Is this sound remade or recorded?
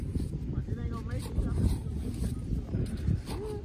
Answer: recorded